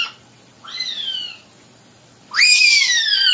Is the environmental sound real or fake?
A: fake